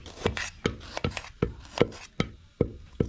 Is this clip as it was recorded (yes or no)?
yes